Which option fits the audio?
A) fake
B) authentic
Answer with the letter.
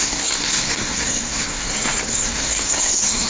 A